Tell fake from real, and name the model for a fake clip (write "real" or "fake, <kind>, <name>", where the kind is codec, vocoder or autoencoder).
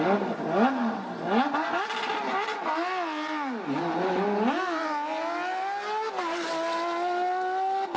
real